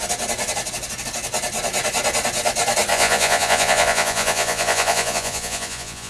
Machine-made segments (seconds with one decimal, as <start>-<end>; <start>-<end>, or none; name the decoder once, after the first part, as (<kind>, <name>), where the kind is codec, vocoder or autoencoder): 2.9-6.1 (vocoder, Vocos)